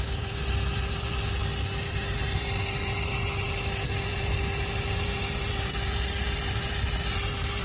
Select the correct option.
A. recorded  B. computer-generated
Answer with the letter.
A